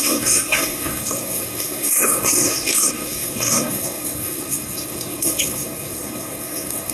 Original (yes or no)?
no